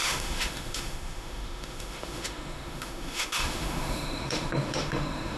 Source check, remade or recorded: remade